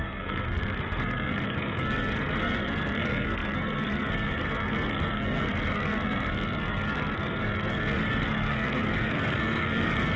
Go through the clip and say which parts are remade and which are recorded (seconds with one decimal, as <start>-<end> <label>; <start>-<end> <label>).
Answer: 0.0-10.2 remade